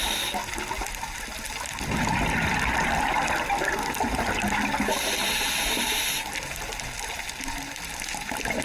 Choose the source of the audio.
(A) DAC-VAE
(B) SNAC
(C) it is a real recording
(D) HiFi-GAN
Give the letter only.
C